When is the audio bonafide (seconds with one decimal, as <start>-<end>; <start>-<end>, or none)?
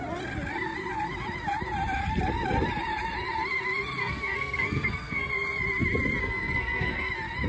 0.0-4.0; 5.3-6.2; 7.1-7.5